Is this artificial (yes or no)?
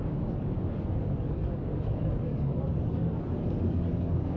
yes